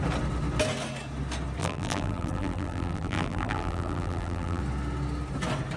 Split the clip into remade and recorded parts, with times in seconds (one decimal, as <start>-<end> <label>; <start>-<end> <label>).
0.0-1.6 recorded; 1.6-4.6 remade; 4.6-5.8 recorded